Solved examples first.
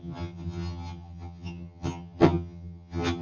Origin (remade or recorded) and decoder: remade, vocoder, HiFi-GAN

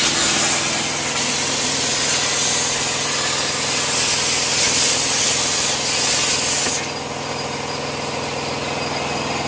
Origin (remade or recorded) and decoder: recorded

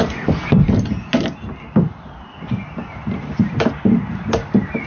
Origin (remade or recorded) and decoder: recorded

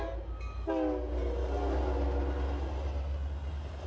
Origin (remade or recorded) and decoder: recorded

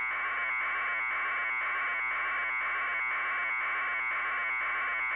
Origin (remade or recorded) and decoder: recorded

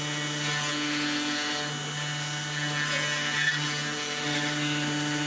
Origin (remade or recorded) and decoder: recorded